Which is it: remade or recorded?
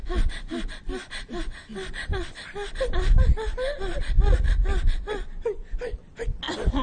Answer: recorded